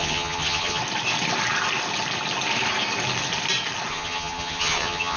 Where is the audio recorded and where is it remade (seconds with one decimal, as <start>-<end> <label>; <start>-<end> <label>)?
0.0-0.8 remade; 0.8-3.9 recorded; 3.9-5.2 remade